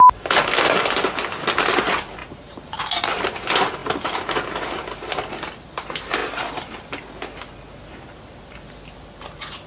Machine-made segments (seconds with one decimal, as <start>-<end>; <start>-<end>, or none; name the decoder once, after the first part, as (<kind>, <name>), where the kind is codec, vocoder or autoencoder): 2.2-3.2 (vocoder, BigVGAN v2)